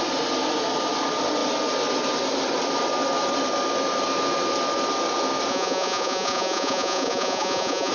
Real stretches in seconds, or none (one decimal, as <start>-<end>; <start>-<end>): 0.0-5.5